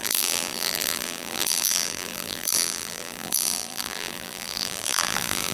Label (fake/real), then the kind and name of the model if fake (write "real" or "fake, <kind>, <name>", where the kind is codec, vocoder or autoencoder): fake, vocoder, BigVGAN v2